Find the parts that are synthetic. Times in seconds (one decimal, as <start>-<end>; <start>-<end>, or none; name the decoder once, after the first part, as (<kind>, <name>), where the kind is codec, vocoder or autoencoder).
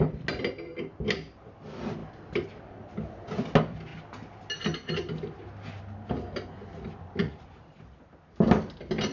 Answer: 7.2-7.8 (vocoder, Vocos)